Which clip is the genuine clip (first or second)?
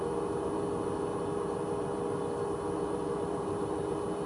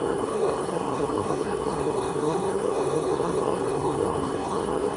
first